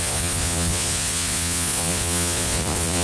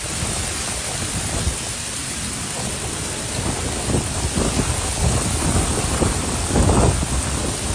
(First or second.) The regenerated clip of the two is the first